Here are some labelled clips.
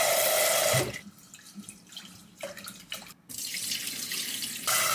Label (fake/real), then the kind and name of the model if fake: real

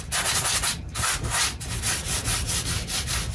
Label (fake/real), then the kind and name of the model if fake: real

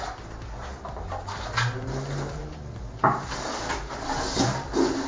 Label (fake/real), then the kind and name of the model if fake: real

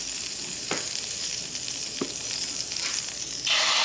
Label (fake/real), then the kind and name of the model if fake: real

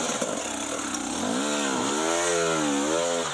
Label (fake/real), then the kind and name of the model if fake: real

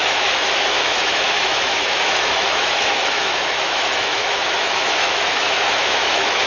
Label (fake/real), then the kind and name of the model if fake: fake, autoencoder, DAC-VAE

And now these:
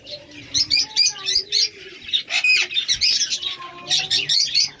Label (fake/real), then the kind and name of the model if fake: real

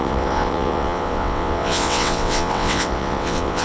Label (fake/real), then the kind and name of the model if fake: fake, vocoder, WaveNeXt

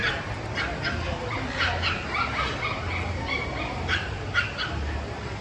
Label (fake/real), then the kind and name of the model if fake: real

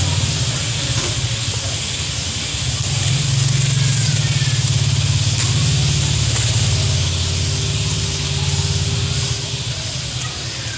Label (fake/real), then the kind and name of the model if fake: real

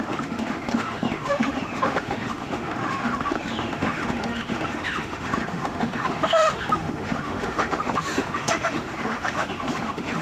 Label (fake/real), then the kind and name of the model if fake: fake, autoencoder, DAC-VAE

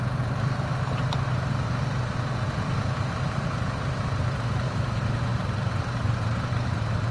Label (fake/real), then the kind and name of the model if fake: fake, vocoder, BigVGAN v2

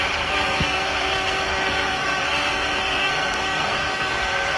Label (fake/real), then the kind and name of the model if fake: fake, codec, SNAC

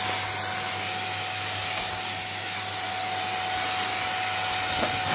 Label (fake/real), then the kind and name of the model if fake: real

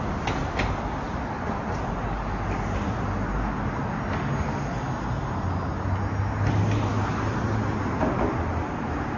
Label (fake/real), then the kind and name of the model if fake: real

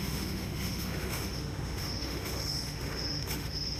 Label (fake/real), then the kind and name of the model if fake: fake, autoencoder, DAC-VAE